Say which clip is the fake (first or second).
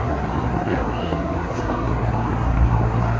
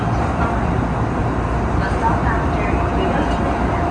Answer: first